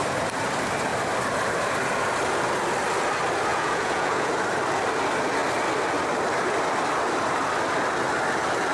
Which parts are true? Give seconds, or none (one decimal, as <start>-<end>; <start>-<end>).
0.0-3.5; 4.3-8.7